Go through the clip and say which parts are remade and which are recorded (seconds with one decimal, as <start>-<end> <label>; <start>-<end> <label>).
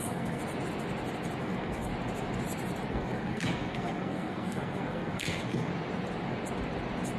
0.0-0.4 remade; 0.4-1.4 recorded; 1.4-1.9 remade; 1.9-2.9 recorded; 2.9-5.7 remade; 5.7-7.2 recorded